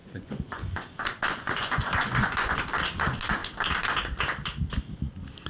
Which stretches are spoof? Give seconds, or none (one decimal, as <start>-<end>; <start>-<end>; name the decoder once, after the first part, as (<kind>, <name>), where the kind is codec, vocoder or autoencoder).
0.0-2.6 (vocoder, Vocos)